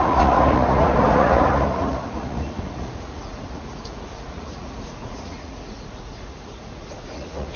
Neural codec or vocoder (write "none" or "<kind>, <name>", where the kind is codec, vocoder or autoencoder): vocoder, Vocos